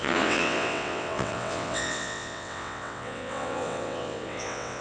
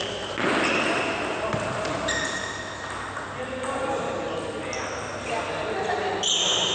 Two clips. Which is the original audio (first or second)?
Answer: second